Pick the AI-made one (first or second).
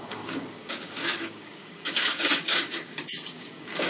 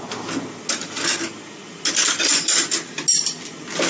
first